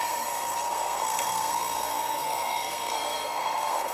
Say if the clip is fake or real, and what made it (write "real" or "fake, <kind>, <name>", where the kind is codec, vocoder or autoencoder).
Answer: fake, codec, SNAC